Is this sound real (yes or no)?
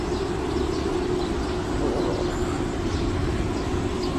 yes